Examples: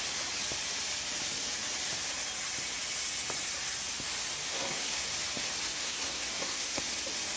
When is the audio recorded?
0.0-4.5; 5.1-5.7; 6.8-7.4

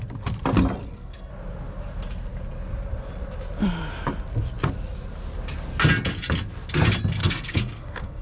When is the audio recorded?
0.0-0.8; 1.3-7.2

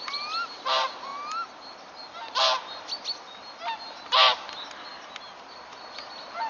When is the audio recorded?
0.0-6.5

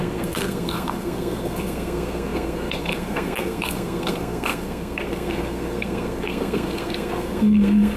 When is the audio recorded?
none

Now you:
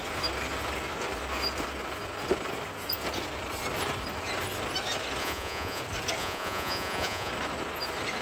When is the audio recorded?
0.0-5.2; 5.8-6.2; 7.3-8.2